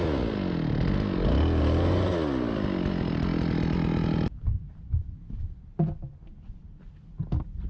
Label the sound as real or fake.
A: real